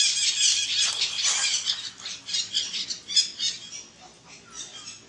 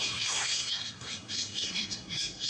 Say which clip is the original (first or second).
first